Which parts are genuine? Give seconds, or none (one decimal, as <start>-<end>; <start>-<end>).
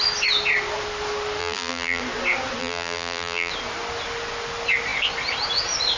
0.0-1.4; 2.0-2.6; 3.5-6.0